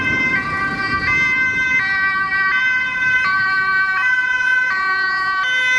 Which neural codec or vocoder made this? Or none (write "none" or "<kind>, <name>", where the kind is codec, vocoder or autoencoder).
none